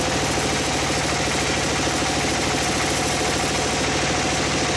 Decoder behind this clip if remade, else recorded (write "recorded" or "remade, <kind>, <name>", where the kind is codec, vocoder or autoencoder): recorded